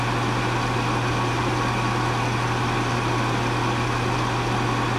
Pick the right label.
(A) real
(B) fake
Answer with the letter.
A